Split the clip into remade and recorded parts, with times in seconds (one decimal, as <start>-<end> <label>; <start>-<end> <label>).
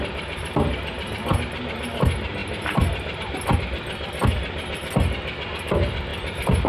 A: 0.0-2.4 recorded; 2.4-3.2 remade; 3.2-6.7 recorded